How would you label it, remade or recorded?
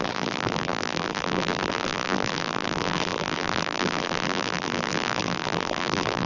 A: remade